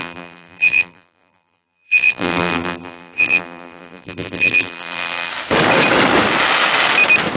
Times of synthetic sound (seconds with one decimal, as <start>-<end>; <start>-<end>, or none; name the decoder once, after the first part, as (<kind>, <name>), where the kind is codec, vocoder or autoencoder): 0.0-5.3 (vocoder, BigVGAN v2)